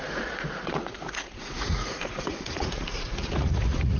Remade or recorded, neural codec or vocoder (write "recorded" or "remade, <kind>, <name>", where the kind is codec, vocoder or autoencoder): remade, vocoder, Vocos